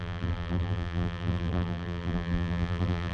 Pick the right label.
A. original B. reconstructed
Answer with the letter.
B